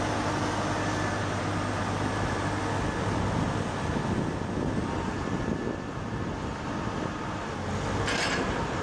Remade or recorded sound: recorded